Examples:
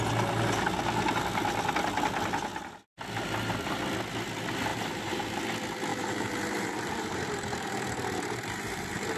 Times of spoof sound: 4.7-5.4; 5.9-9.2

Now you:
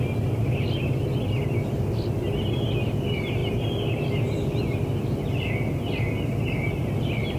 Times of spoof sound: none